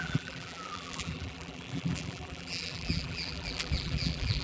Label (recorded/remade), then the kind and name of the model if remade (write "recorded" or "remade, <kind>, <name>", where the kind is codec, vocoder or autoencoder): remade, vocoder, BigVGAN v2